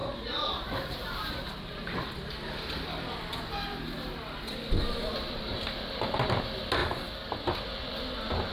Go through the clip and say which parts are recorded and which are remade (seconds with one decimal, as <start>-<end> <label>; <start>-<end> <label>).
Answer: 0.0-8.5 recorded